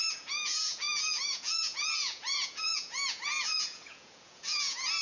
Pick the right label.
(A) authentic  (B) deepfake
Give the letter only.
B